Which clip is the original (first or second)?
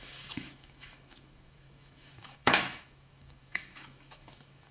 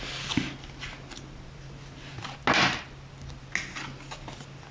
second